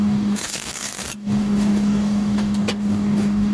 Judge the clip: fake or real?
fake